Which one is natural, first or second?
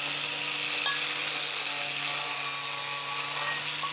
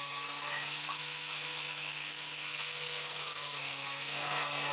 first